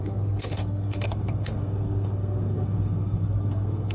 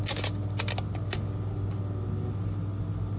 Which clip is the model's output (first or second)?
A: first